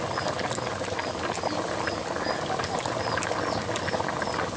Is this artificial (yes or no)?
no